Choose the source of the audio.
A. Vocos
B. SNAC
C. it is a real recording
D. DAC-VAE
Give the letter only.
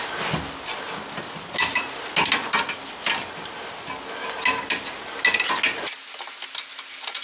C